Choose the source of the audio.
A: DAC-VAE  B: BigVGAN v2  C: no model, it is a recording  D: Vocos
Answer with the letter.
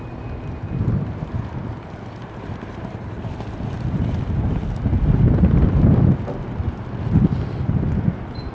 C